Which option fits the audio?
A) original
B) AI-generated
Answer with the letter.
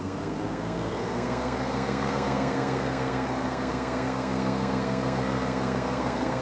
B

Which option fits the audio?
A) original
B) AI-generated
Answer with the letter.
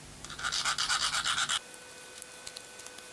A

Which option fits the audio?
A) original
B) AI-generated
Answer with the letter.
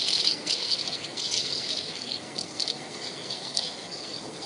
B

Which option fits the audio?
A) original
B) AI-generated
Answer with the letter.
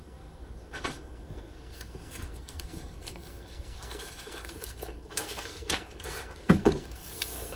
B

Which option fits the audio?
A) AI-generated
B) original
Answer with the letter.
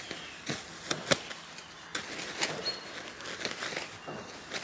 B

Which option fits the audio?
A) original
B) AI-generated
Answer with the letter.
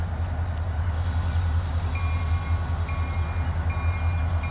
A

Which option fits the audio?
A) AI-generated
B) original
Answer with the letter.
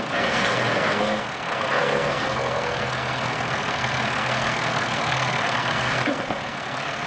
A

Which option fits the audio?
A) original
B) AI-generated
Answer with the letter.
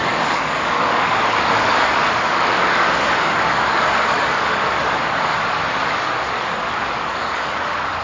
B